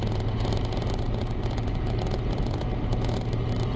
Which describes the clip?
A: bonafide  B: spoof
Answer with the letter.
A